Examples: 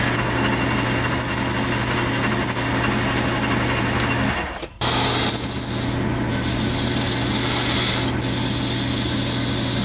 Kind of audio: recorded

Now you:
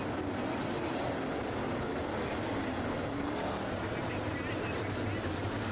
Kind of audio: recorded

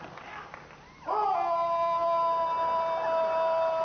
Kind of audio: recorded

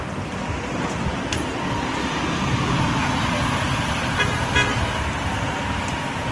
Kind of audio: recorded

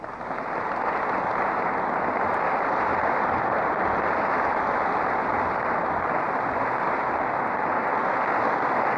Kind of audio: recorded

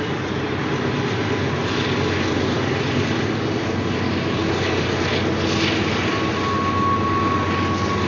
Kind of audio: recorded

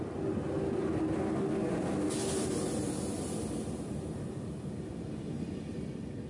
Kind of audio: recorded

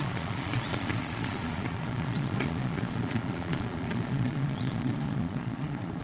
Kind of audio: remade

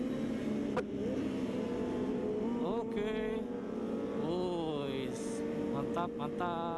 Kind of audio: recorded